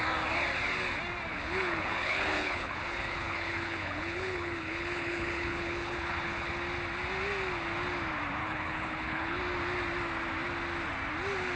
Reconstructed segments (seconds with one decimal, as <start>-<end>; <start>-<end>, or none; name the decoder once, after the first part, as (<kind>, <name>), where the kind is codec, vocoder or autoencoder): 1.3-6.5 (codec, HILCodec); 8.4-9.4